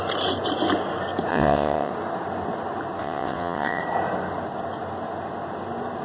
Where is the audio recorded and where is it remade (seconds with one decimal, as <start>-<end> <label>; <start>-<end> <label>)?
0.0-1.3 recorded; 1.3-1.9 remade; 1.9-3.0 recorded; 3.0-3.8 remade; 3.8-6.0 recorded